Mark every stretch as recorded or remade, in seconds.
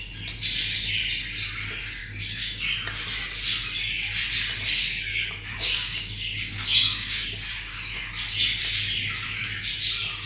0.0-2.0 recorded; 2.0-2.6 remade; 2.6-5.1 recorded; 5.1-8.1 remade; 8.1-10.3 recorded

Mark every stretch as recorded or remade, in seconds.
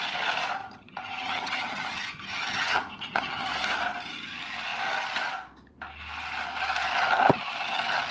0.0-0.6 recorded; 0.6-3.5 remade; 3.5-8.1 recorded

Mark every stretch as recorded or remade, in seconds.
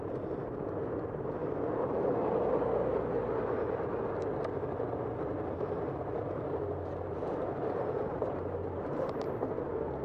0.0-10.0 recorded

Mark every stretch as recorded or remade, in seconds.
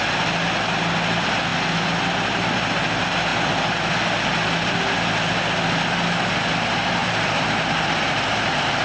0.0-7.0 recorded; 7.0-7.7 remade; 7.7-8.8 recorded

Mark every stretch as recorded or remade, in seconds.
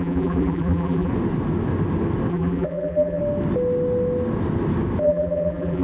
0.0-1.1 remade; 1.1-2.3 recorded; 2.3-3.2 remade; 3.2-5.0 recorded; 5.0-5.8 remade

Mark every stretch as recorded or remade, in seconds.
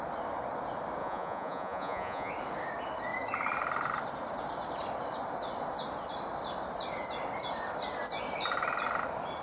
0.0-1.0 recorded; 1.0-2.3 remade; 2.3-9.4 recorded